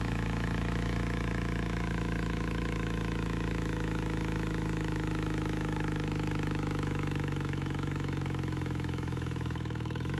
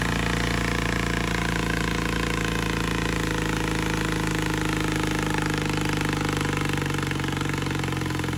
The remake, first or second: first